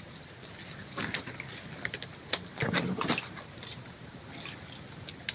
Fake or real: real